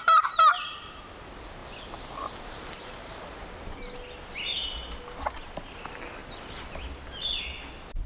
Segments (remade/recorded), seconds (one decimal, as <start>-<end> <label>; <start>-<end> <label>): 0.0-8.1 recorded